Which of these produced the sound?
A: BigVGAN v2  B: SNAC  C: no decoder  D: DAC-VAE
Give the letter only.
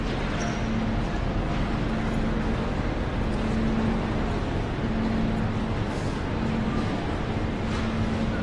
C